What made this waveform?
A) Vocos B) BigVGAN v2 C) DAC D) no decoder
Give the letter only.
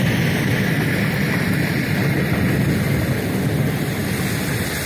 D